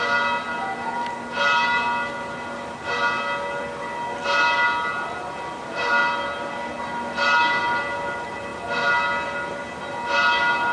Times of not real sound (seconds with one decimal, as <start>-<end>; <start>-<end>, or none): none